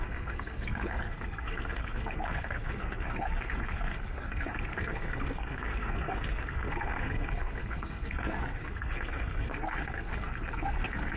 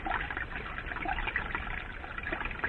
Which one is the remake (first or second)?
first